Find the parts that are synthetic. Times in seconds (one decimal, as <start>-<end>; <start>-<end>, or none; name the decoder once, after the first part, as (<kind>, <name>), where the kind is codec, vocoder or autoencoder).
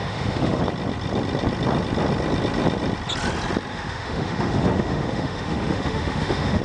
0.0-0.6 (autoencoder, DAC-VAE); 3.7-6.6